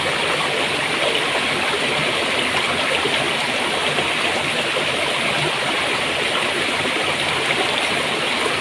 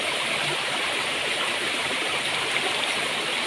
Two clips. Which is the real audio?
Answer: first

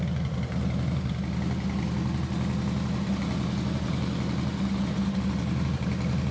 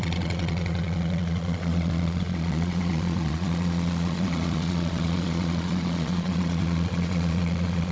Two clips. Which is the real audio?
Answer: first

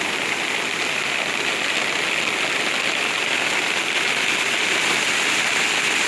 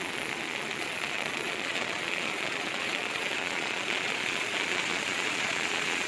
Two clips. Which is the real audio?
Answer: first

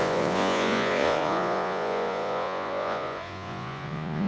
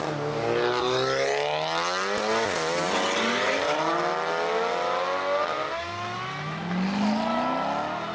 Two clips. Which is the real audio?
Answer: second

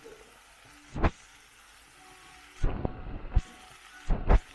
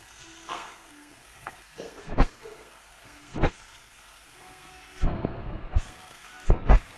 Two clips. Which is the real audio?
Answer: first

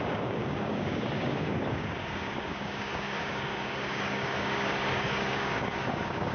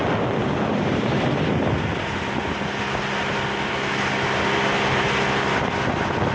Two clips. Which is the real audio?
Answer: second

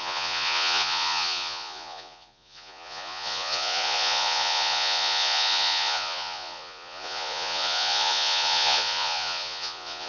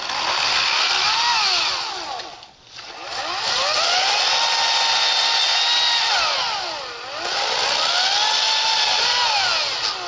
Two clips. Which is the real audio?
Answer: second